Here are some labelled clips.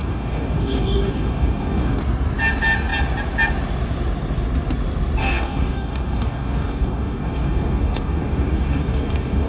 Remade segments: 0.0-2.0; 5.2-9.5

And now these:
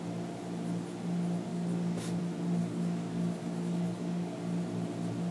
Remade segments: 1.5-2.2; 2.6-4.4

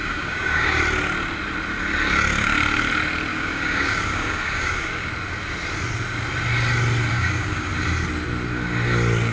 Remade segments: 0.0-0.8; 3.3-5.1; 7.1-7.7

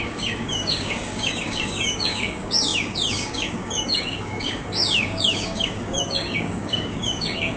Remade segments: 0.0-7.6